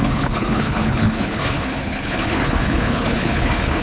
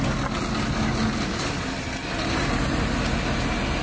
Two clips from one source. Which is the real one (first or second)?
second